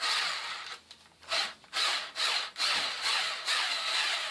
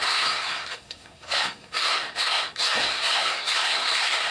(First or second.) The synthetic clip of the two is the second